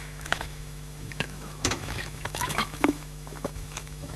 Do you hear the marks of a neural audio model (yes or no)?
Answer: yes